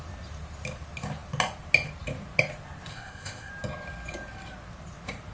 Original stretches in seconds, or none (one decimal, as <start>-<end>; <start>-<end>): 0.0-2.9; 3.5-5.3